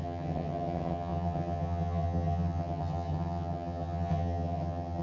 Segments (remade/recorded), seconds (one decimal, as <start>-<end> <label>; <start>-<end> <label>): 0.0-5.0 remade